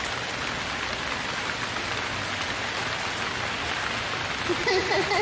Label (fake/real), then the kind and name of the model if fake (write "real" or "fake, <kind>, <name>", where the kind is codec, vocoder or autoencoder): real